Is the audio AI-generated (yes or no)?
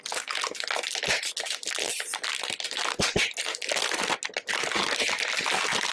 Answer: no